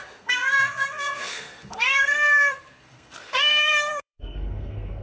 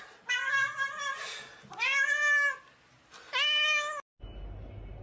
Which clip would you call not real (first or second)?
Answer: first